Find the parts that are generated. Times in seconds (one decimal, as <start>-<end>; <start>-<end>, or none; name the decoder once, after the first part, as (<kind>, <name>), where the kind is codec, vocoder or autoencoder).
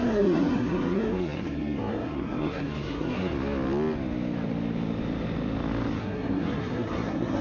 0.0-3.3 (codec, SNAC); 6.0-7.4